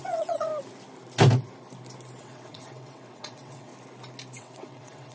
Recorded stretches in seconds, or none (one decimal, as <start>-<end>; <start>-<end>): 0.5-2.2; 3.7-4.4